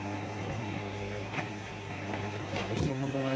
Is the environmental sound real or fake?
fake